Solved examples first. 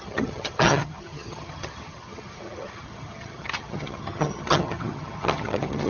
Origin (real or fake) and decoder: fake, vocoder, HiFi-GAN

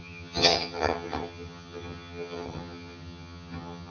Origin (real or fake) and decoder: fake, vocoder, HiFi-GAN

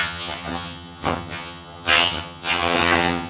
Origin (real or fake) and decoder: fake, vocoder, HiFi-GAN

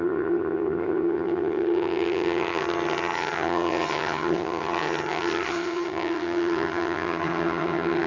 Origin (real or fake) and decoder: fake, vocoder, HiFi-GAN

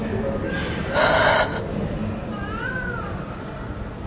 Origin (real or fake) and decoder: real